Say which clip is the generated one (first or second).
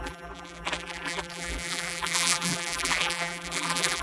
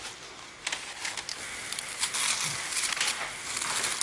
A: first